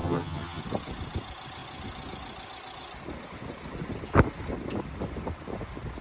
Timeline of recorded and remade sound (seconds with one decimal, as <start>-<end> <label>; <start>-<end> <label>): 0.0-0.6 remade; 0.6-6.0 recorded